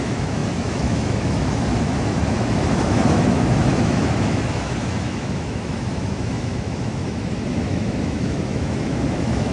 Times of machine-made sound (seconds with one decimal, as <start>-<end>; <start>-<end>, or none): 0.0-9.5